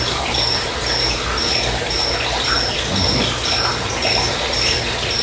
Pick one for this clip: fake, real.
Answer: real